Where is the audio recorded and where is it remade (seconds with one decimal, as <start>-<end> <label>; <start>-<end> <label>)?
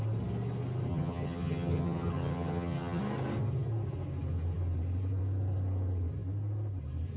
0.0-0.9 recorded; 0.9-3.0 remade; 3.0-7.2 recorded